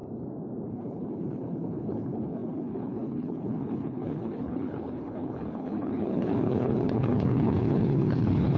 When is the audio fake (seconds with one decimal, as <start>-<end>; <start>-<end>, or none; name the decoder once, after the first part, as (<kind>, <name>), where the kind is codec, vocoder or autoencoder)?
0.7-8.6 (codec, HILCodec)